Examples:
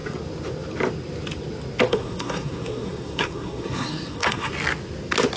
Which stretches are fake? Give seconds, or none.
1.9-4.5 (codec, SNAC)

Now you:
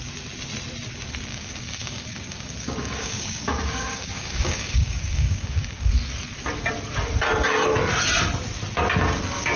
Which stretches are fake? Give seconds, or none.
1.3-5.9 (codec, DAC)

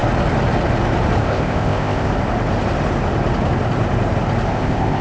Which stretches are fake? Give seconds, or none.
1.2-2.1 (codec, ZipCodec); 4.5-5.0

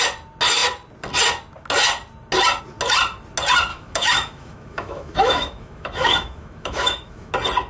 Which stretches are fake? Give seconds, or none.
3.7-7.3 (autoencoder, DAC-VAE)

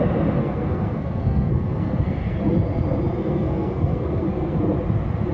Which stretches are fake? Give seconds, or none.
0.4-2.4 (codec, SNAC); 3.2-4.6

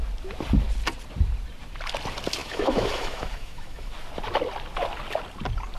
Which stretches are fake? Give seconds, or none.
2.4-3.9 (autoencoder, DAC-VAE)